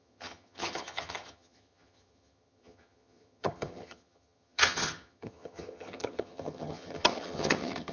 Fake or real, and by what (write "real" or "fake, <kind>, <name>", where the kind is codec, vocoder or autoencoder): fake, vocoder, HiFi-GAN